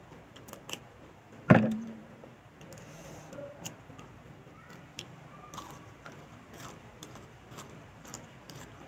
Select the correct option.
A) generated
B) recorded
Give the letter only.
A